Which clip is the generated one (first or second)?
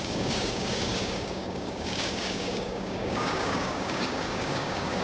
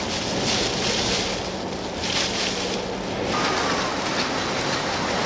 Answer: first